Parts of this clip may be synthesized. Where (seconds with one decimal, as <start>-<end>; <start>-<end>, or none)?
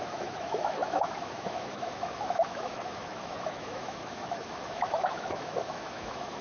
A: 0.0-6.4